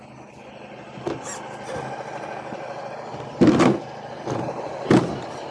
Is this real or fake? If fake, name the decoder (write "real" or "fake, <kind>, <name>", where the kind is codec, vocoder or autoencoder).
real